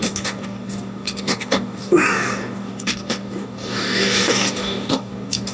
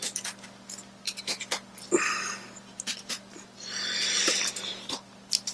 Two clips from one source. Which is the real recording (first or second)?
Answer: second